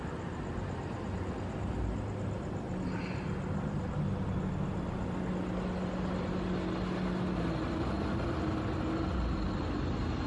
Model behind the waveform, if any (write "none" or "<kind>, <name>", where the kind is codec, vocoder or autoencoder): none